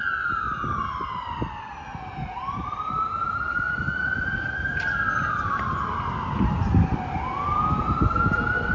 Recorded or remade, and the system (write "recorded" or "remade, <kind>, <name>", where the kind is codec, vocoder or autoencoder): recorded